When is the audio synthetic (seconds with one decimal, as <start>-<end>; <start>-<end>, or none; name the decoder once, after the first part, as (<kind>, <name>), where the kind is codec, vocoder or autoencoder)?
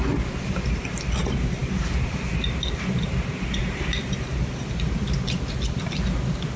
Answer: none